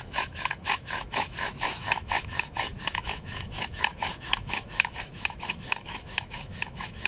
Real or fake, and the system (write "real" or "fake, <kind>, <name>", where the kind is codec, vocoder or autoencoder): fake, autoencoder, DAC-VAE